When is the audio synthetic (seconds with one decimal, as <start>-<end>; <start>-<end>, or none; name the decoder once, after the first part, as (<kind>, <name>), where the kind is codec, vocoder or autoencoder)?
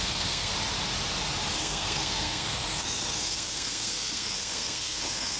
0.0-0.5 (codec, SNAC); 1.6-5.4